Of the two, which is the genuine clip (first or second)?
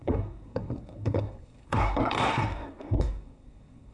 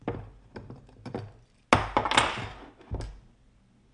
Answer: second